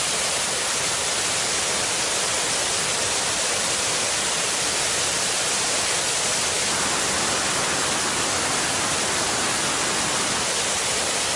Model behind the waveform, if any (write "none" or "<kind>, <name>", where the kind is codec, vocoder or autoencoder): none